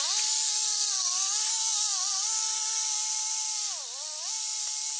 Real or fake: real